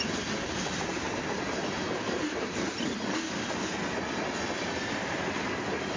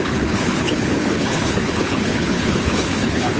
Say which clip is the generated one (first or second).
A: second